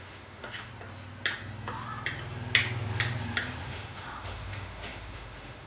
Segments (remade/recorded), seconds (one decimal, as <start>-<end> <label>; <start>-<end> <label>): 0.0-0.7 remade; 0.7-3.6 recorded; 3.6-5.7 remade